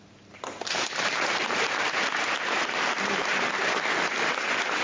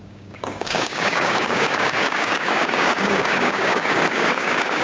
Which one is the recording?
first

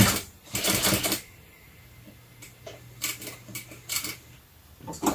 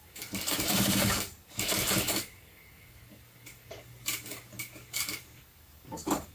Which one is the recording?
first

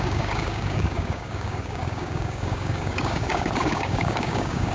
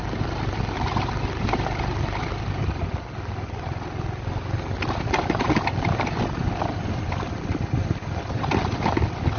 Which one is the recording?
second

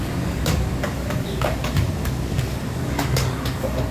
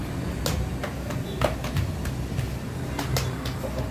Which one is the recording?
second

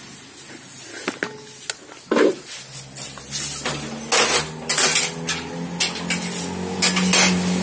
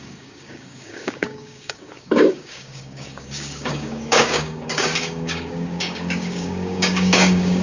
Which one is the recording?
first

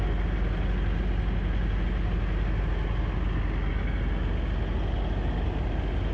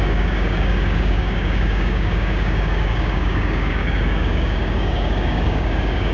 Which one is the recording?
first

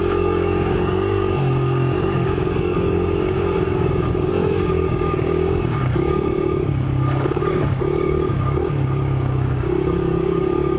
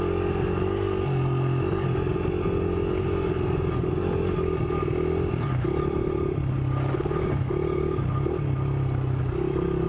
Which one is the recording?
second